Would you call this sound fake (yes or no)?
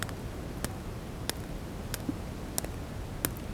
no